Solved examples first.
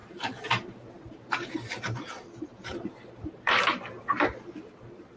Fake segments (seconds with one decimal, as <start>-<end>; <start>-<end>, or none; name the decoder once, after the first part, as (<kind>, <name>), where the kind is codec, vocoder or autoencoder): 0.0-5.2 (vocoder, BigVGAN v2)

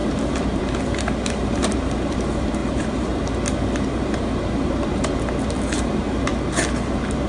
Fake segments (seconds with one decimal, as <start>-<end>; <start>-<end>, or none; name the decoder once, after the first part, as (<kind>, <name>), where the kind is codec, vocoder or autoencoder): 0.0-6.3 (vocoder, BigVGAN v2); 6.8-7.3

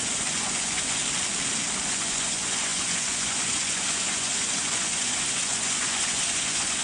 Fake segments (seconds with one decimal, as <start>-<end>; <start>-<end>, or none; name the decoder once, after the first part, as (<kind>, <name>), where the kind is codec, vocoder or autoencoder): 0.0-1.0 (vocoder, Vocos); 1.9-6.8

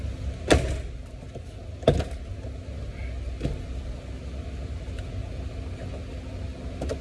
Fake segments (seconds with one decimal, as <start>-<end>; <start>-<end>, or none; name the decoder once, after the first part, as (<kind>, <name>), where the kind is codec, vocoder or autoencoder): none

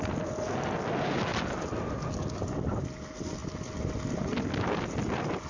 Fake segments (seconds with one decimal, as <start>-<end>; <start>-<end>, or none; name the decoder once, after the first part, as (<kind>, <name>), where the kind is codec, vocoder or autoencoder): none

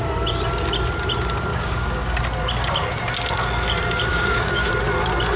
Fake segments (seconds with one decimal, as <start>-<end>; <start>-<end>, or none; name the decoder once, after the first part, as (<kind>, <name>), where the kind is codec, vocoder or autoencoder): 1.5-2.2 (codec, DAC); 4.1-4.7

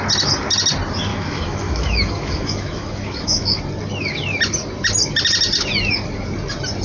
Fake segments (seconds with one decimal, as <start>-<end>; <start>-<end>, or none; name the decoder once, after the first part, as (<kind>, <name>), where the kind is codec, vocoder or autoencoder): 1.1-3.6 (autoencoder, DAC-VAE)

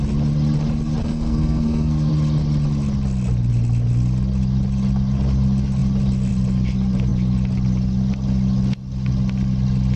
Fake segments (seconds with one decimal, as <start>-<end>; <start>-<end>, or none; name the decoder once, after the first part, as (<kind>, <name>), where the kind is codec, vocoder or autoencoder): 1.0-2.1 (codec, SNAC)